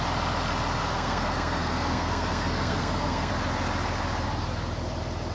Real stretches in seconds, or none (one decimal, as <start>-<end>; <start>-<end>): 0.0-0.8; 3.3-5.3